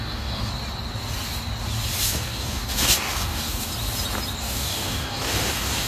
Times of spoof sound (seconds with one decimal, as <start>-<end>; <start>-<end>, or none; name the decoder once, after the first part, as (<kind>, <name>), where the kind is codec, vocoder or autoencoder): 0.0-0.5 (codec, DAC); 2.0-3.7; 4.4-5.9